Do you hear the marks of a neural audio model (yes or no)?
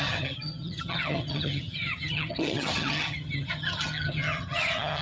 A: yes